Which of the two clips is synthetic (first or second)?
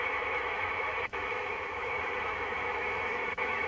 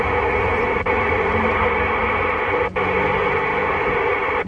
first